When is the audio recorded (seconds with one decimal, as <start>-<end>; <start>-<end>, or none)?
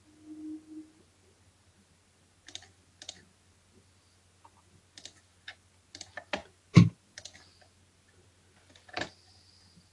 0.0-6.4; 7.0-9.9